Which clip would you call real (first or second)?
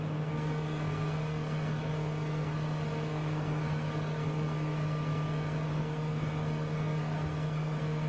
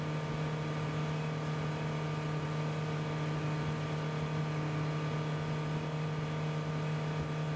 second